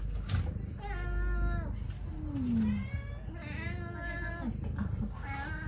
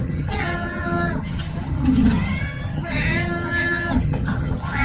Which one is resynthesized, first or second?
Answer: second